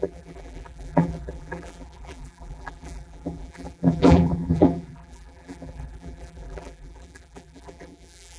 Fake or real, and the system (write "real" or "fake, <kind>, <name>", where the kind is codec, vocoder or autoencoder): fake, vocoder, BigVGAN v2